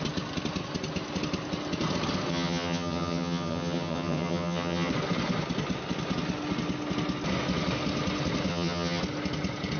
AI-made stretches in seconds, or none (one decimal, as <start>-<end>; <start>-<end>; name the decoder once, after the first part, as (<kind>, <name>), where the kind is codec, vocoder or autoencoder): 2.3-4.9 (vocoder, HiFi-GAN); 8.5-9.0